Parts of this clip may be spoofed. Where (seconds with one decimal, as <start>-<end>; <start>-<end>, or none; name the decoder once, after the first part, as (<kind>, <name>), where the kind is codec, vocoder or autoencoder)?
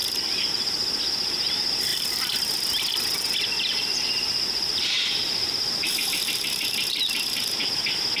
0.0-0.5 (vocoder, BigVGAN v2); 1.9-2.8; 3.7-7.6